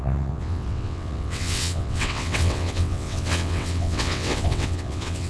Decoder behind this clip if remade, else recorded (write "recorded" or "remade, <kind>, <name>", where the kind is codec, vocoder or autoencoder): remade, vocoder, WaveNeXt